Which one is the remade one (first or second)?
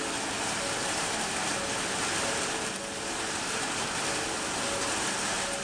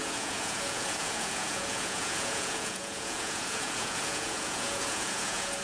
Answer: second